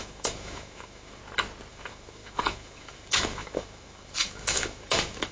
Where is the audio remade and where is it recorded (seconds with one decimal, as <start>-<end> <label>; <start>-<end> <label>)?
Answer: 0.0-1.2 remade; 1.2-1.7 recorded; 1.7-5.3 remade